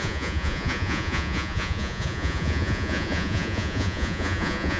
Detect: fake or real fake